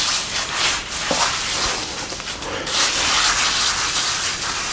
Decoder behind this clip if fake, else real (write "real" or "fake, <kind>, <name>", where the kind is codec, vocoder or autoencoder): real